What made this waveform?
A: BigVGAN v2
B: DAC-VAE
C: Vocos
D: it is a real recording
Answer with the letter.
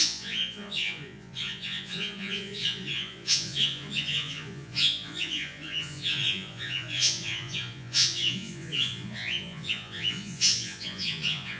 C